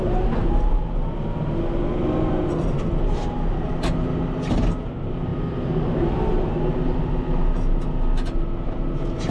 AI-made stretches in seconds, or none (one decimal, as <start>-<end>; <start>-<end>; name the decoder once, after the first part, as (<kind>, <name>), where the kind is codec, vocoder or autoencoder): none

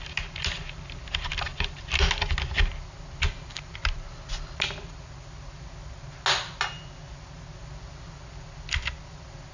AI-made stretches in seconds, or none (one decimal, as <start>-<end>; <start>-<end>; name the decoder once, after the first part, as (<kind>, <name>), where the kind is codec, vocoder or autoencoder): none

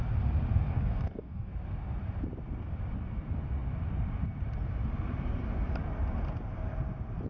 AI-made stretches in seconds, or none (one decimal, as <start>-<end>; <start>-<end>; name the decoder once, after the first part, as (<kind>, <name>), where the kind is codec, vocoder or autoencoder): 0.7-1.5 (codec, DAC)

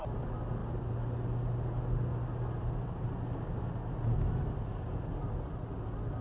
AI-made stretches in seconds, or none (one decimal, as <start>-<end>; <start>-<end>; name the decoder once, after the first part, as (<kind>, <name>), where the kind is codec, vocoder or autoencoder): none

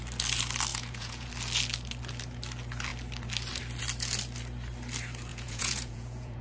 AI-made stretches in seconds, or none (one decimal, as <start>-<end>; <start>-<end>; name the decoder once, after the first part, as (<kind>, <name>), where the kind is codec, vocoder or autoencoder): 0.7-1.3 (vocoder, Vocos); 5.3-6.4

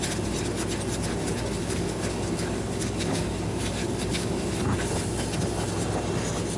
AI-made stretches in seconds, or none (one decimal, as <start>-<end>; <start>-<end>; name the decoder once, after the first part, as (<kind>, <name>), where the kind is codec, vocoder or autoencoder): 1.6-4.5 (codec, DAC)

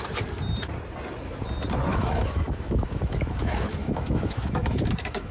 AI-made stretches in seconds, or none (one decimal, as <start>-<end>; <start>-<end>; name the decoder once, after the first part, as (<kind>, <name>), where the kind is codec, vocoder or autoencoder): 1.9-5.3 (autoencoder, DAC-VAE)

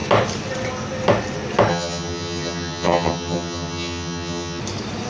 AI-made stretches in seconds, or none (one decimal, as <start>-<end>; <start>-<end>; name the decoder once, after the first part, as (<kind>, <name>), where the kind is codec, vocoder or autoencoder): 1.7-4.6 (vocoder, HiFi-GAN)